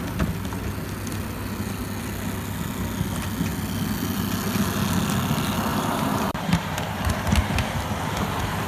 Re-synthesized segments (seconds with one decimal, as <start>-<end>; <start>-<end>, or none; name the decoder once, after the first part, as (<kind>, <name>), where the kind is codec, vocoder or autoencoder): 5.7-7.0 (vocoder, BigVGAN v2)